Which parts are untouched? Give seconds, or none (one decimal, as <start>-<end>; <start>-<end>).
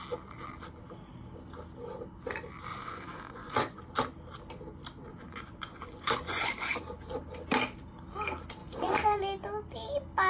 0.0-2.7; 3.8-5.1; 6.8-8.6; 9.2-10.3